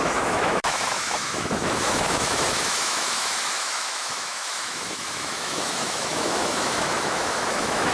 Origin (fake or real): fake